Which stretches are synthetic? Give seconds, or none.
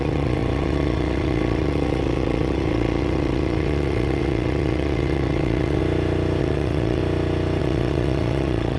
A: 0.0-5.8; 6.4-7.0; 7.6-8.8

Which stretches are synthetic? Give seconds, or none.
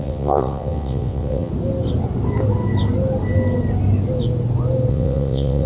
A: 0.0-1.5; 4.9-5.7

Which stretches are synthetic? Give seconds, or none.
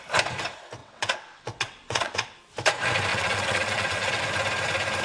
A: 0.8-2.4; 3.1-4.2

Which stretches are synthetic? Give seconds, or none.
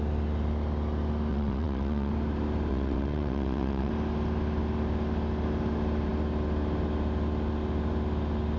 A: 1.3-2.1; 2.7-3.9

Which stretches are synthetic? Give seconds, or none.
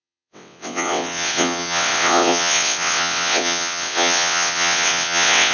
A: 0.0-5.5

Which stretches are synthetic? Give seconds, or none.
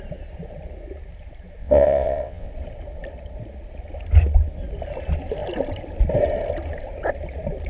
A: 1.6-2.5